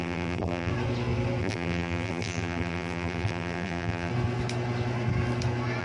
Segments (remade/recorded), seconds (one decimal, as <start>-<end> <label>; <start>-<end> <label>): 0.0-0.7 remade; 0.7-1.4 recorded; 1.4-4.1 remade; 4.1-5.8 recorded